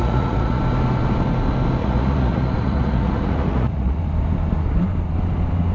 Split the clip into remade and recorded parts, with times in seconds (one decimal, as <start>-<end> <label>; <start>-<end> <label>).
0.0-0.6 remade; 0.6-1.8 recorded; 1.8-4.0 remade; 4.0-5.7 recorded

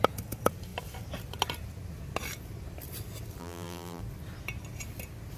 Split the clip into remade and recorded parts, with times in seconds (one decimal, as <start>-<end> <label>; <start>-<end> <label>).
0.0-3.4 recorded; 3.4-4.0 remade; 4.0-5.4 recorded

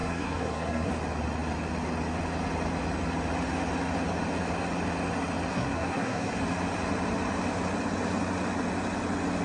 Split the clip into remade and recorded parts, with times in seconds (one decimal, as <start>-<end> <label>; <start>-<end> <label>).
0.0-0.9 remade; 0.9-5.5 recorded; 5.5-6.4 remade; 6.4-9.4 recorded

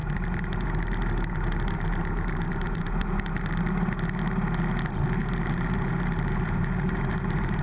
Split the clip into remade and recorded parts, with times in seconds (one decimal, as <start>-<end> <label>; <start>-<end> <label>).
0.0-3.0 remade; 3.0-5.2 recorded; 5.2-7.6 remade

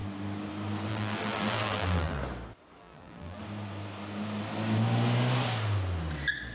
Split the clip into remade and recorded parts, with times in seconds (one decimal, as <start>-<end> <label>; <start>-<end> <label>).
0.0-0.9 recorded; 0.9-2.2 remade; 2.2-2.8 recorded; 2.8-3.4 remade; 3.4-6.5 recorded

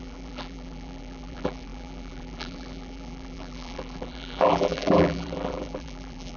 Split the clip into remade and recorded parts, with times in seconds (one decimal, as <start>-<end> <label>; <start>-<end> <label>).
0.0-6.4 remade